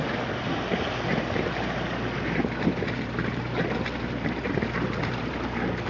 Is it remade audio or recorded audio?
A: recorded